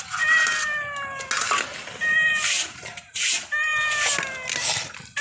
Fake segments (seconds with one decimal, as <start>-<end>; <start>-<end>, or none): 1.7-3.2